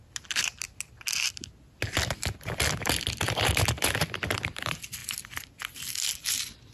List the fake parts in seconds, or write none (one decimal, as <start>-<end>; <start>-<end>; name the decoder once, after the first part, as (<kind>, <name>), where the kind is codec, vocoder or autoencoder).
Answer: none